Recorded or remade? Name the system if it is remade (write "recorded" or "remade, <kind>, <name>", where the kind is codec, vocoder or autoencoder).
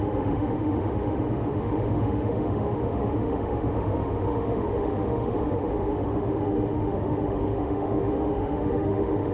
remade, autoencoder, DAC-VAE